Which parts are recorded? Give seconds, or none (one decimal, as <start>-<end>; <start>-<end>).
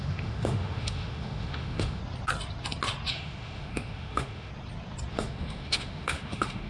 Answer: 2.0-3.1; 4.5-5.1